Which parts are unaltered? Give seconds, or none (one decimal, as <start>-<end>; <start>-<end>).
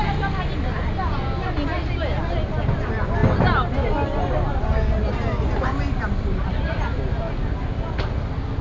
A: 0.0-8.6